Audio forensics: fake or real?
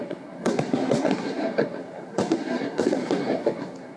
fake